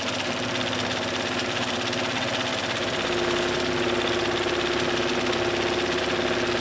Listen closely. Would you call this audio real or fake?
real